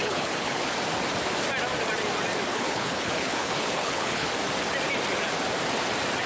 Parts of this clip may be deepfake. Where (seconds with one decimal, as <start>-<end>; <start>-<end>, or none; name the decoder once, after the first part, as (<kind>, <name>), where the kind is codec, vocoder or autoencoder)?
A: 0.0-0.6 (codec, HILCodec); 2.5-4.3